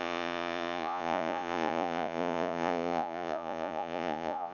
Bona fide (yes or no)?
no